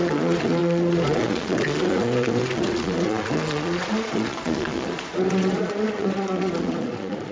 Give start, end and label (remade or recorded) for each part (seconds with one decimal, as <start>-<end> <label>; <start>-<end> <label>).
0.0-7.3 remade